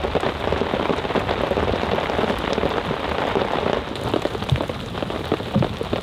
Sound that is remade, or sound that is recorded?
recorded